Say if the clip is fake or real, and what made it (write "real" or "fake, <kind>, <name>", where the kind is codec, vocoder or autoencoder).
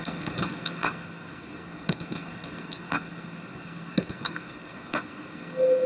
fake, codec, SNAC